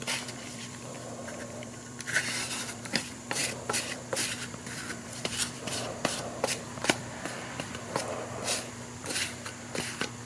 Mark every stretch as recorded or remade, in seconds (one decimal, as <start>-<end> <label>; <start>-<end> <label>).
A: 0.0-8.0 remade; 8.0-8.7 recorded; 8.7-10.3 remade

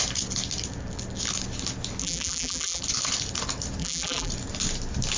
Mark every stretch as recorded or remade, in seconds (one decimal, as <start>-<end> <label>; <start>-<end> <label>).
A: 0.0-2.0 recorded; 2.0-2.8 remade; 2.8-3.8 recorded; 3.8-4.3 remade; 4.3-5.2 recorded

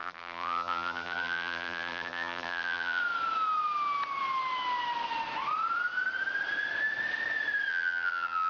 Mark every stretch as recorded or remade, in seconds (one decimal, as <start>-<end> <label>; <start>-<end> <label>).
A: 0.0-3.0 remade; 3.0-7.7 recorded; 7.7-8.5 remade

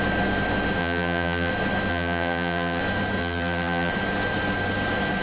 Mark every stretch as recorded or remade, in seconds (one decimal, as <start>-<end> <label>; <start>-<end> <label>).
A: 0.0-0.8 recorded; 0.8-1.5 remade; 1.5-1.9 recorded; 1.9-2.8 remade; 2.8-3.2 recorded; 3.2-3.9 remade; 3.9-5.2 recorded

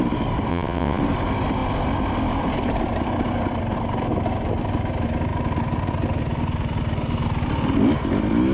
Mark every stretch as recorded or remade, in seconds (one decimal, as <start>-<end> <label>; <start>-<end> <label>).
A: 0.0-0.5 recorded; 0.5-1.0 remade; 1.0-8.5 recorded

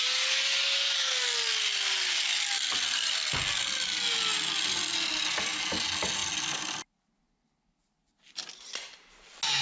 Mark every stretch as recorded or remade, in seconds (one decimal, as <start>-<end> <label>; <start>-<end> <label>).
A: 0.0-9.6 recorded

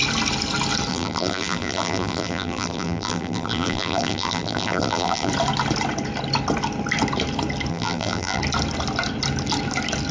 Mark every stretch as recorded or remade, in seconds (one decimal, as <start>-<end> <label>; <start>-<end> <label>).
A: 0.0-0.9 recorded; 0.9-5.3 remade; 5.3-7.7 recorded; 7.7-8.4 remade; 8.4-10.1 recorded

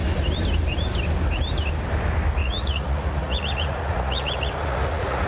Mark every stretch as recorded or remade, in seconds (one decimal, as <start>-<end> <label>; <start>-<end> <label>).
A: 0.0-2.4 recorded; 2.4-5.3 remade